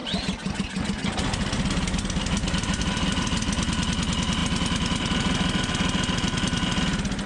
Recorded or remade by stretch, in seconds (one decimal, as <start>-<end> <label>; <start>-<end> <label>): 0.0-7.3 recorded